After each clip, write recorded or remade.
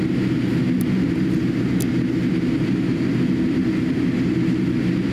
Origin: recorded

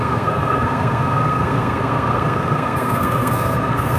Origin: remade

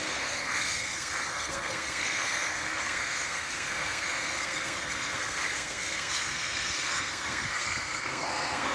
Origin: remade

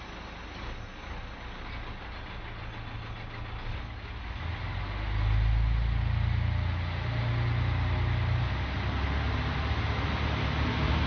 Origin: recorded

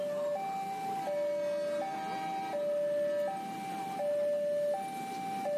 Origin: recorded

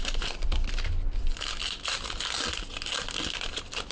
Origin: recorded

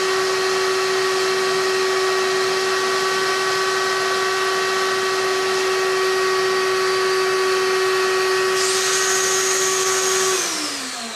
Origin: recorded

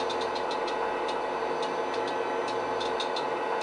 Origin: recorded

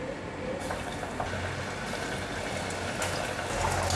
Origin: recorded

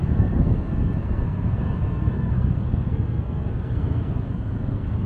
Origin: remade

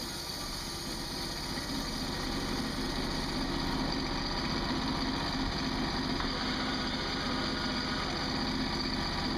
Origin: recorded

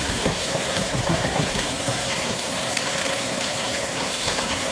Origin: remade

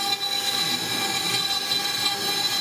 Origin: recorded